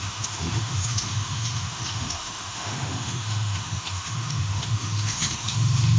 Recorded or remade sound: remade